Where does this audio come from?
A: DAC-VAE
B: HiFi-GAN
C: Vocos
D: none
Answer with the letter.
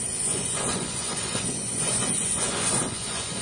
C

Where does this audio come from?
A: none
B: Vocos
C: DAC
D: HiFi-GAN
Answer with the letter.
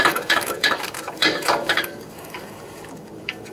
C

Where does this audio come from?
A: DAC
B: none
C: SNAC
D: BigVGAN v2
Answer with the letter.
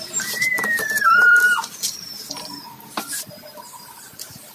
D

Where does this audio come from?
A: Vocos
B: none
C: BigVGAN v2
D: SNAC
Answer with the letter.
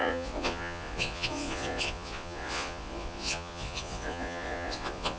A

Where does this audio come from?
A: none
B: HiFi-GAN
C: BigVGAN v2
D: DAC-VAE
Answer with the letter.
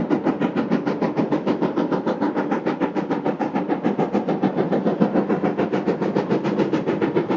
C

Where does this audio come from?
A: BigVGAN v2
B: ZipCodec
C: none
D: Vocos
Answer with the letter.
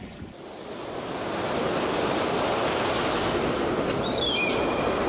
C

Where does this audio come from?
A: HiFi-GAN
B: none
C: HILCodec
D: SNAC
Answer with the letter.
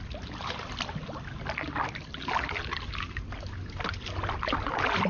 B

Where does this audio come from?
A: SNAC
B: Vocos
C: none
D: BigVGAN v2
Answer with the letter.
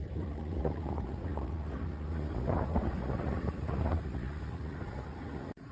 B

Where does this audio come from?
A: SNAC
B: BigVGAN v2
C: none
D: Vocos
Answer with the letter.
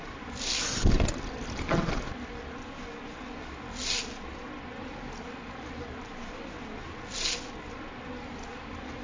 C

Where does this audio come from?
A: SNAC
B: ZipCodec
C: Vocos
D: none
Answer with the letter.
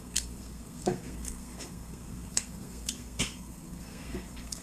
A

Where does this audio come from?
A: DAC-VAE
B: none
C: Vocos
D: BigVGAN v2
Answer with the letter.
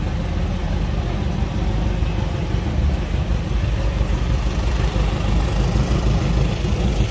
B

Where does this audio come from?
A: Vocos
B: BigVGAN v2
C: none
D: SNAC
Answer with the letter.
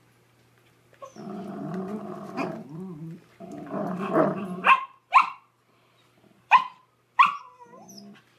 C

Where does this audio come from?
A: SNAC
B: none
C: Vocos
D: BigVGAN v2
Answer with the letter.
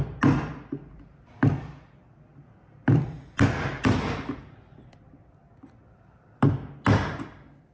B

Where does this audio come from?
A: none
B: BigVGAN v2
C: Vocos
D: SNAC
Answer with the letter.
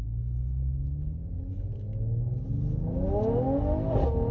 A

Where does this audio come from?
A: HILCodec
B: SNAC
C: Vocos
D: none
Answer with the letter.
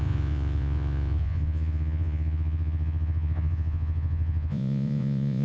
C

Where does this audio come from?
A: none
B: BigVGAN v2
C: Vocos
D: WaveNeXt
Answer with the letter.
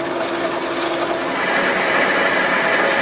A